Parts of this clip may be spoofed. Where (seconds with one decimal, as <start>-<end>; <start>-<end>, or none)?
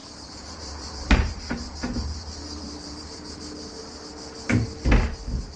0.0-3.4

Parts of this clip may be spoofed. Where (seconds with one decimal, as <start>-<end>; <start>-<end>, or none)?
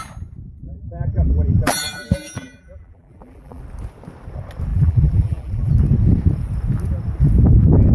0.6-3.6; 4.7-5.7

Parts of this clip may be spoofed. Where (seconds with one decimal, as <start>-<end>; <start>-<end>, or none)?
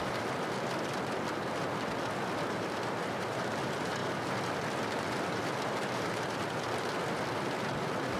none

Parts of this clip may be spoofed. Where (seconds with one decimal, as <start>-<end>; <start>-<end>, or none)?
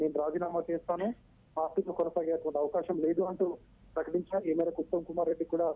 0.0-0.5; 2.5-3.6; 4.4-5.8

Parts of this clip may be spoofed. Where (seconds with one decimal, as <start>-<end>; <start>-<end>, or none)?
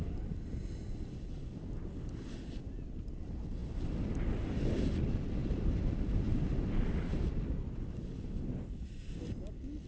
5.4-6.7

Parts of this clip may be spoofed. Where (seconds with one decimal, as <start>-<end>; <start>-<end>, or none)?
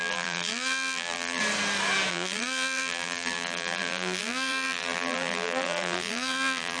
0.0-1.4; 2.1-6.8